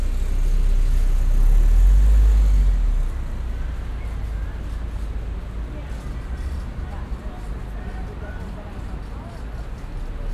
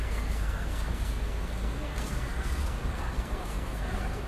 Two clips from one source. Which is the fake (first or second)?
second